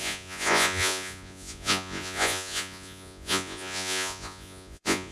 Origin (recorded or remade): remade